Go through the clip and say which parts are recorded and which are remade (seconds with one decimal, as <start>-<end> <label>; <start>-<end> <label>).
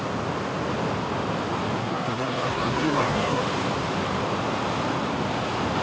0.0-1.8 recorded; 1.8-3.4 remade; 3.4-5.8 recorded